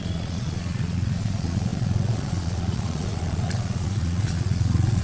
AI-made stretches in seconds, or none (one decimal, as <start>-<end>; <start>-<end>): 0.0-5.0

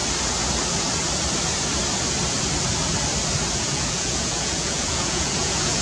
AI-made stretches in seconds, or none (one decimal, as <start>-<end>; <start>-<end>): 3.5-5.8

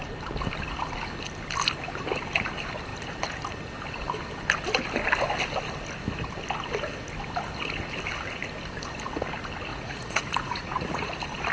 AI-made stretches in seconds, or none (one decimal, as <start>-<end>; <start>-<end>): 9.7-11.1